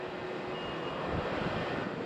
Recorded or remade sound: recorded